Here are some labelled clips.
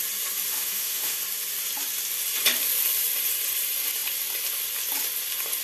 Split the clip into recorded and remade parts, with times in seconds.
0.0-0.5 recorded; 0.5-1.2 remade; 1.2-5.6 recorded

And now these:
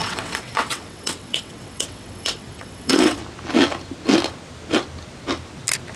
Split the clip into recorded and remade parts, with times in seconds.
0.0-3.2 remade; 3.2-6.0 recorded

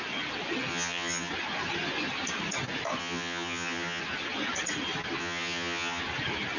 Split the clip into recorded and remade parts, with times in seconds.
0.0-0.7 recorded; 0.7-1.3 remade; 1.3-3.0 recorded; 3.0-4.0 remade; 4.0-5.2 recorded; 5.2-6.0 remade; 6.0-6.6 recorded

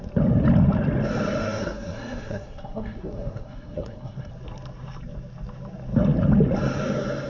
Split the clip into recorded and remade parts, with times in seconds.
0.0-1.4 recorded; 1.4-4.3 remade; 4.3-7.3 recorded

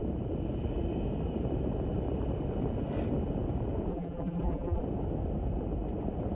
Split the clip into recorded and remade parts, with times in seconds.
0.0-3.9 recorded; 3.9-4.8 remade; 4.8-6.3 recorded

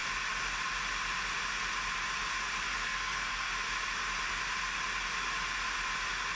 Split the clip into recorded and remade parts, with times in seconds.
0.0-2.7 recorded; 2.7-3.5 remade; 3.5-6.3 recorded

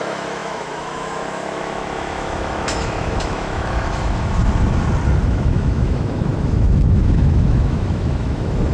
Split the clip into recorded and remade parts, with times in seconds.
0.0-4.4 remade; 4.4-5.2 recorded; 5.2-8.7 remade

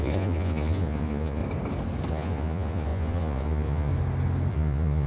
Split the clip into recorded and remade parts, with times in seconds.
0.0-1.4 remade; 1.4-2.1 recorded; 2.1-3.9 remade; 3.9-4.5 recorded; 4.5-5.1 remade